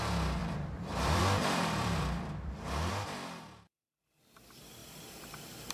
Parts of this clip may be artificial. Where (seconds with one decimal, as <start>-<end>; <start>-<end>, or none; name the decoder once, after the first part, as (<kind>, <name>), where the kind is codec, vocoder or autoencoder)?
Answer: 0.4-2.9 (vocoder, BigVGAN v2)